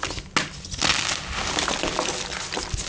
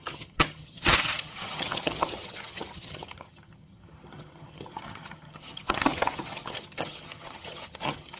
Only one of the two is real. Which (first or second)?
first